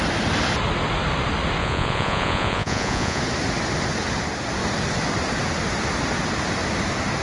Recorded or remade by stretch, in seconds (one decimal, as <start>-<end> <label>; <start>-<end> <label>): 0.0-1.6 recorded; 1.6-3.2 remade; 3.2-7.2 recorded